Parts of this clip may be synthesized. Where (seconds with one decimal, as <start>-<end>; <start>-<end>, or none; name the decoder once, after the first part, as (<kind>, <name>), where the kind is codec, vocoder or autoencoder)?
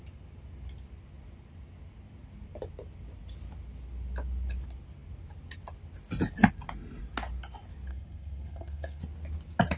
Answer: 7.9-9.0 (codec, SNAC)